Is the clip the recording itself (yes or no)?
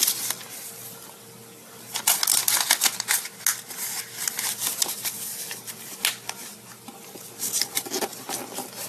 yes